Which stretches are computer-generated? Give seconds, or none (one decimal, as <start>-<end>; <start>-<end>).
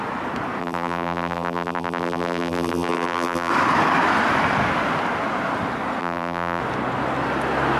0.6-3.5; 6.0-6.6